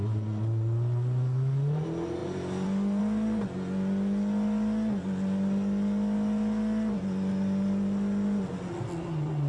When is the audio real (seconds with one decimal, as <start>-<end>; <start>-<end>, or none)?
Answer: 0.0-2.2; 3.0-9.5